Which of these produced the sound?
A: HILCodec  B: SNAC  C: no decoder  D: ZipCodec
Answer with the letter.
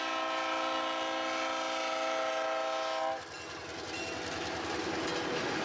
C